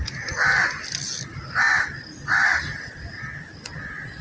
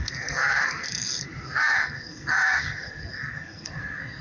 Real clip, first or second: first